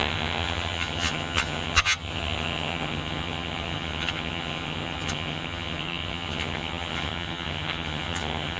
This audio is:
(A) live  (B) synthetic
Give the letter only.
B